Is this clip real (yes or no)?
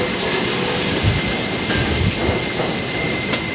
no